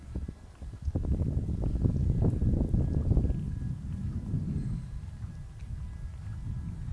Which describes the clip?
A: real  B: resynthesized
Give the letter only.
A